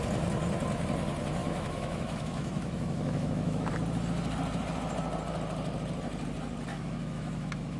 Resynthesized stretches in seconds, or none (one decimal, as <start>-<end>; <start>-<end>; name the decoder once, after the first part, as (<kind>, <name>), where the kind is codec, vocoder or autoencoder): 1.4-3.7 (autoencoder, DAC-VAE); 6.7-7.8

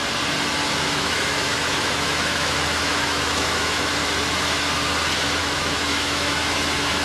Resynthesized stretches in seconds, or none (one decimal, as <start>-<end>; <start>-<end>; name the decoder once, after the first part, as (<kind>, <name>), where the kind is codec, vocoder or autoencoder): 0.7-4.0 (autoencoder, DAC-VAE); 5.4-7.0

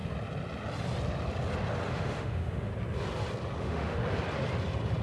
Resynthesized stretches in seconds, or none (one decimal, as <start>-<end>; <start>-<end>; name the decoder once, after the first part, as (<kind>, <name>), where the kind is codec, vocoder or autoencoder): 1.9-2.7 (autoencoder, DAC-VAE); 3.6-4.0

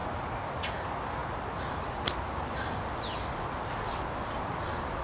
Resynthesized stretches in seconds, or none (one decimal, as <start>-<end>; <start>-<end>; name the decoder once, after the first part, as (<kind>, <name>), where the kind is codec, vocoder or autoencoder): none

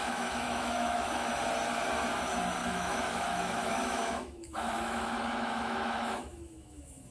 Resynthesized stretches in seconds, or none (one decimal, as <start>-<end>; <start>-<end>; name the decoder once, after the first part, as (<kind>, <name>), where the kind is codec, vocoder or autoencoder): 0.0-1.3 (autoencoder, DAC-VAE); 2.6-7.1

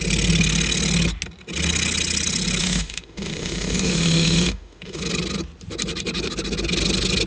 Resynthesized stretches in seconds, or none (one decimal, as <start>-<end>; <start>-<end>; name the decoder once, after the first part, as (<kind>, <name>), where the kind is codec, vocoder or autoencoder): 2.6-5.0 (autoencoder, DAC-VAE)

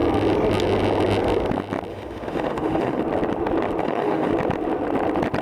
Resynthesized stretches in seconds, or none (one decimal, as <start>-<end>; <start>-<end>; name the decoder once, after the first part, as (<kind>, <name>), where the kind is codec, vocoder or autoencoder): 1.9-3.0 (autoencoder, DAC-VAE); 3.8-4.3